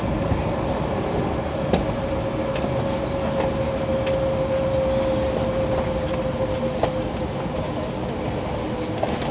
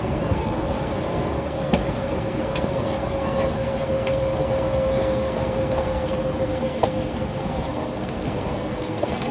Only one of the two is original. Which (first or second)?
first